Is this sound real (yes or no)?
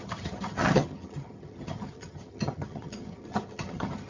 no